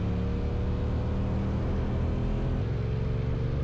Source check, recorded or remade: recorded